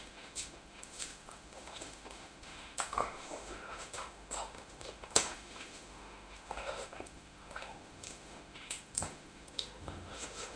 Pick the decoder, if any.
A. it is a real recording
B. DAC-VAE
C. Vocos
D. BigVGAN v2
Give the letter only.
B